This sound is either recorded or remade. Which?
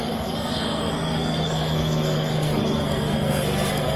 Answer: remade